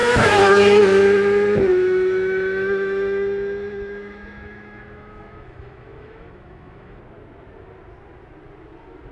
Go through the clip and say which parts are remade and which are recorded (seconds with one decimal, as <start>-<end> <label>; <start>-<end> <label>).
0.0-0.8 remade; 0.8-1.7 recorded; 1.7-7.0 remade; 7.0-9.1 recorded